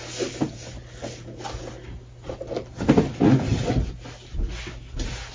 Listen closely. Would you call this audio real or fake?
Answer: real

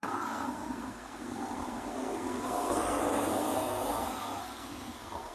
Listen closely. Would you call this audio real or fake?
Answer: fake